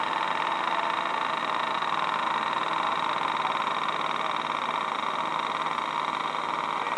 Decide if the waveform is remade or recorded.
recorded